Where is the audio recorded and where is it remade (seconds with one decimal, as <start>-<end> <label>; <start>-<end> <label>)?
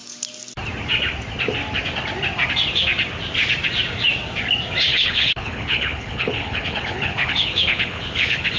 0.0-4.9 recorded; 4.9-8.6 remade